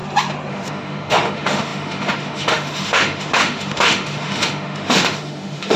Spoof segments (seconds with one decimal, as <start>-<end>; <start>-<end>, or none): 0.5-5.8